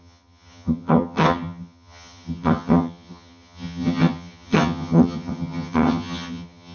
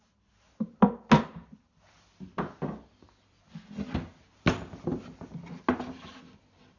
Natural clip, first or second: second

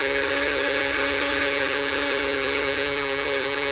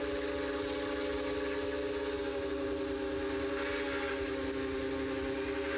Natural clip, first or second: second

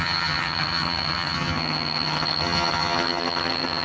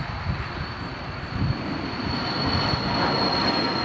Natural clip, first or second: second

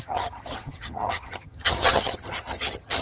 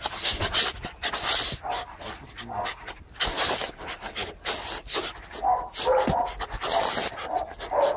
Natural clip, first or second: second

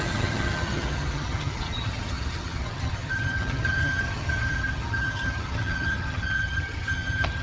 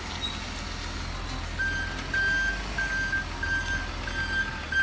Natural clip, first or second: second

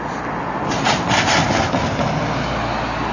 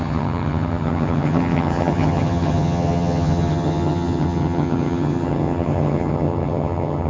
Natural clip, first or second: first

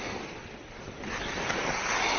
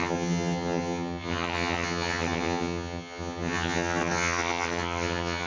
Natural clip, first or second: first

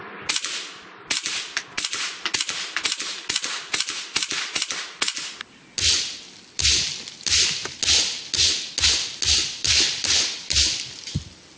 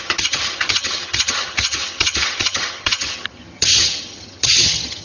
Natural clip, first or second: first